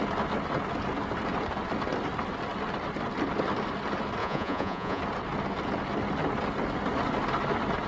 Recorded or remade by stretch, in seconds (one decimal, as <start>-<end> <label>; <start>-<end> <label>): 0.0-4.2 recorded; 4.2-5.0 remade; 5.0-7.9 recorded